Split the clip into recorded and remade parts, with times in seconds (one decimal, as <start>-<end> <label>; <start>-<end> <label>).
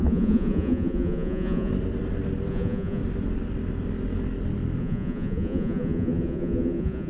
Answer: 0.0-1.7 remade; 1.7-2.5 recorded; 2.5-3.0 remade; 3.0-4.8 recorded; 4.8-7.1 remade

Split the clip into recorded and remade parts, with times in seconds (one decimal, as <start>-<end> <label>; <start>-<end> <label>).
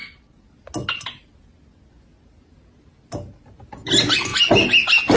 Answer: 0.0-5.2 recorded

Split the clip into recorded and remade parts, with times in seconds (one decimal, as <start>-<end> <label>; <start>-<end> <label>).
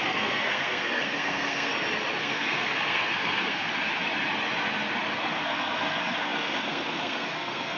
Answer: 0.0-1.7 remade; 1.7-2.2 recorded; 2.2-3.7 remade; 3.7-5.2 recorded; 5.2-7.8 remade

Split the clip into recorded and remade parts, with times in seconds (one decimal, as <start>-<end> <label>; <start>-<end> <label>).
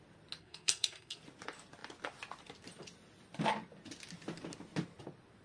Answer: 0.0-0.4 recorded; 0.4-1.2 remade; 1.2-5.4 recorded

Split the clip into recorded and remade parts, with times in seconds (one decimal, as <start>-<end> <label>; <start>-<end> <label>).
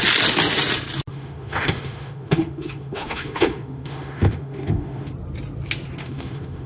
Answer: 0.0-1.1 recorded; 1.1-5.1 remade; 5.1-6.0 recorded; 6.0-6.7 remade